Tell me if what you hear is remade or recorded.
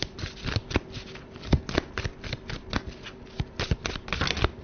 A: recorded